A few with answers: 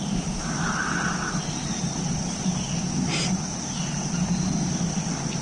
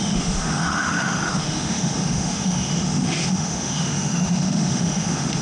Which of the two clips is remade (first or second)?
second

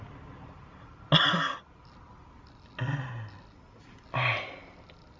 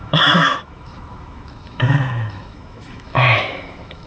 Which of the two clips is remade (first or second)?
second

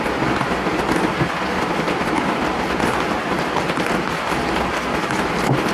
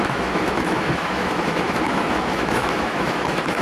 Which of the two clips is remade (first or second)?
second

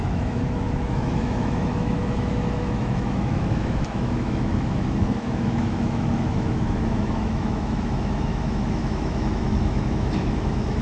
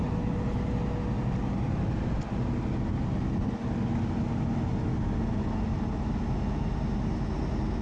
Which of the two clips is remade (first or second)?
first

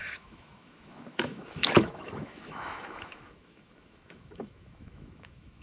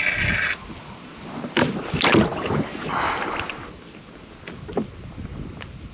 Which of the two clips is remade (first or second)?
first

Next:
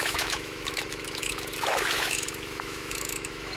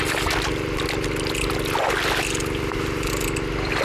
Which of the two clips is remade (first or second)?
first